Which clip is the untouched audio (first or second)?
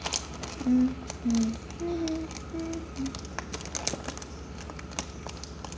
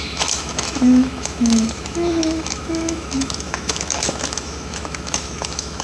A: first